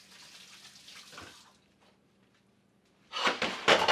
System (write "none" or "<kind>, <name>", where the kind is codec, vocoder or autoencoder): none